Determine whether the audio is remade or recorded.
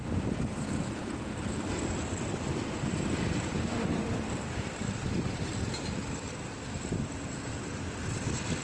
remade